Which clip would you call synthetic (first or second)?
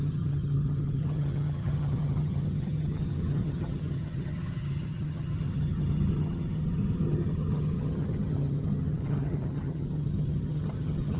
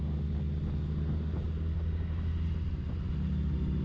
first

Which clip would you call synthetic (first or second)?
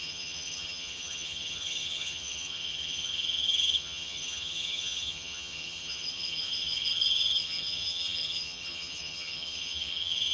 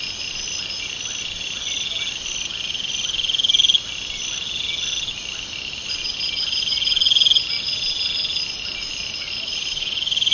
first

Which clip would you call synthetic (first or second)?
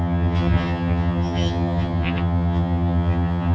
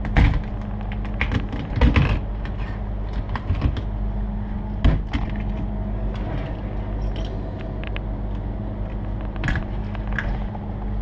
first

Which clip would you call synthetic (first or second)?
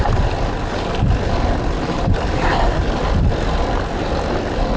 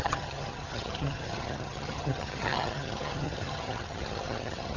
second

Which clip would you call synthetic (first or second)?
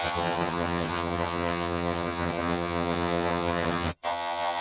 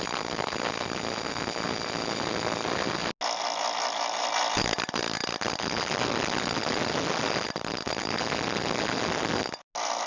first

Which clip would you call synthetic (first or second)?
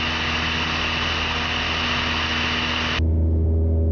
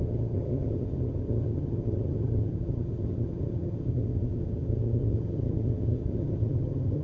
second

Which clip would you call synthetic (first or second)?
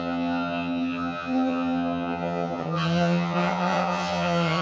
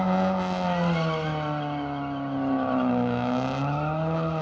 first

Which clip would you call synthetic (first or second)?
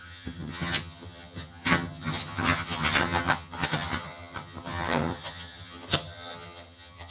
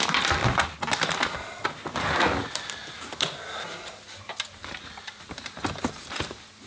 first